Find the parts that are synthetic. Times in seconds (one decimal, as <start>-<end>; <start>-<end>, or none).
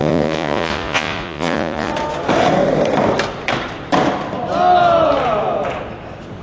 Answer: 0.0-1.9